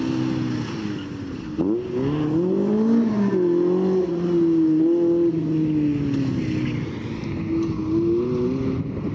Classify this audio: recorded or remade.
recorded